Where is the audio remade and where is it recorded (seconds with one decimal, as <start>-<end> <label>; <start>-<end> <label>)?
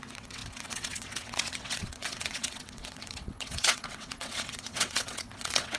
0.0-5.8 remade